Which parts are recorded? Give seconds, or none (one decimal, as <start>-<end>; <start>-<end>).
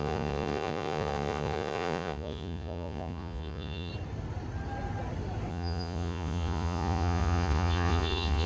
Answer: 3.9-5.5